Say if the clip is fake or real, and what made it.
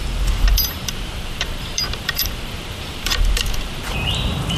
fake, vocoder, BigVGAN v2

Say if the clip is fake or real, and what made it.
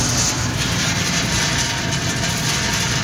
real